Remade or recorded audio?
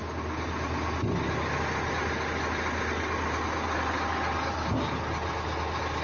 recorded